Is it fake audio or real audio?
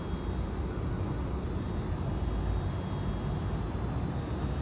real